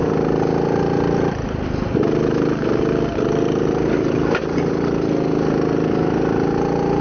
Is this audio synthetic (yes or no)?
no